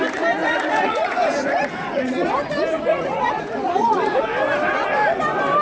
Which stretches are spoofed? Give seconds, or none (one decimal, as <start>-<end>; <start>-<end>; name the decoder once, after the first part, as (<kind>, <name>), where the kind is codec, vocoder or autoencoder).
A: 0.4-2.3 (vocoder, Vocos); 2.9-4.2